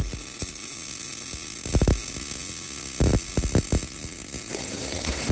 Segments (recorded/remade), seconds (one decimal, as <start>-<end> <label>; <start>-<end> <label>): 0.0-4.5 recorded; 4.5-5.3 remade